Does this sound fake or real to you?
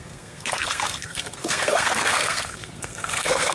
fake